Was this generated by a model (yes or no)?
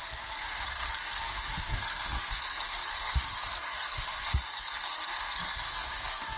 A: yes